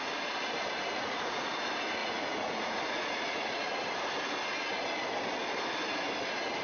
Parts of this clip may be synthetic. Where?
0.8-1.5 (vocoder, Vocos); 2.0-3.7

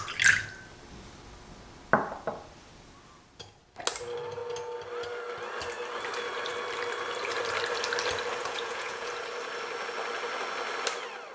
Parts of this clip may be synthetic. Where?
8.4-9.1 (vocoder, Vocos)

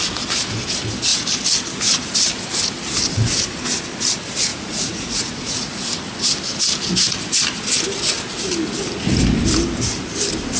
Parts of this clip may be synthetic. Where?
4.5-5.8 (vocoder, Vocos)

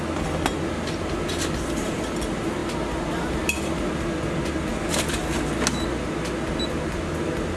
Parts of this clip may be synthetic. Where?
none

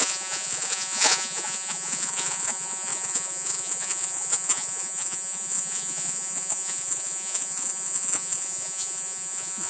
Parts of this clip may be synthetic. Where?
0.0-9.7 (vocoder, Vocos)

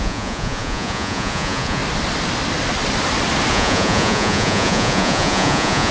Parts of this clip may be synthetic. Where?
0.0-1.8 (vocoder, Vocos); 3.5-5.9

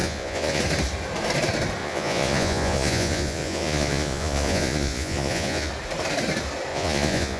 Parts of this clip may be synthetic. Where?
0.0-0.6 (vocoder, Vocos); 1.8-5.7; 6.7-7.4

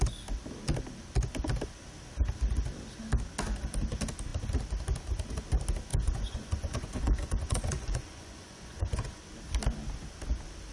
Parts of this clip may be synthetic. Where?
5.9-9.2 (vocoder, Vocos)